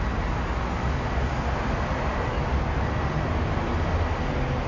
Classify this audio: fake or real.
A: real